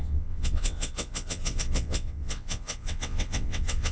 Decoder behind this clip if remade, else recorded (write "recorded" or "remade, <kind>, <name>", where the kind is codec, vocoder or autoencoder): remade, vocoder, WaveNeXt